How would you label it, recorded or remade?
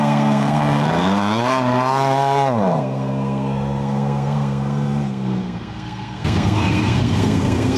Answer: remade